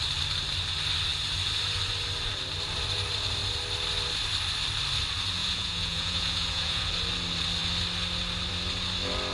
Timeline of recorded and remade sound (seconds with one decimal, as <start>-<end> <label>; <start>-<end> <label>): 0.0-5.4 recorded; 5.4-6.9 remade; 6.9-9.3 recorded